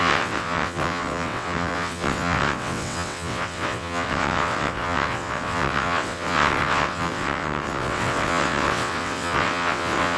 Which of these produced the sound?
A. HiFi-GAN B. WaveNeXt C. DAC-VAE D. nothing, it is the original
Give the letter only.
B